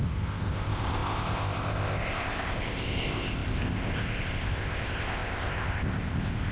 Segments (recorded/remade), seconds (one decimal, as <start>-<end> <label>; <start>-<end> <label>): 0.0-6.5 remade